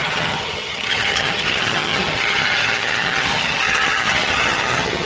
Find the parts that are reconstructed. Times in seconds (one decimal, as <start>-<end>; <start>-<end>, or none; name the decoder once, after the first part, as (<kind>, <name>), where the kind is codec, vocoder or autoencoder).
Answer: 0.0-5.1 (vocoder, HiFi-GAN)